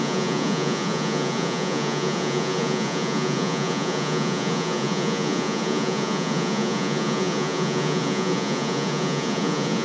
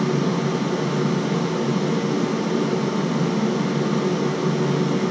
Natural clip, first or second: second